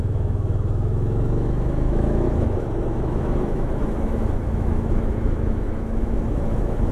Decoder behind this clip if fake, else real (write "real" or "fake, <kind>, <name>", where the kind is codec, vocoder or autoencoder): fake, autoencoder, DAC-VAE